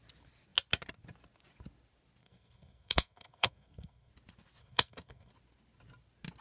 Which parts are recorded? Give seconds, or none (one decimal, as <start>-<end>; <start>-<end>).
0.0-2.2; 4.1-4.6; 5.3-6.4